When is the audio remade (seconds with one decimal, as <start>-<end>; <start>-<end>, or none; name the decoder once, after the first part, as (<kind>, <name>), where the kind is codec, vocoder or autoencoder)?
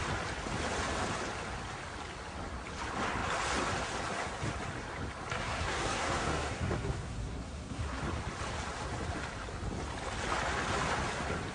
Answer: 5.3-8.0 (codec, SNAC)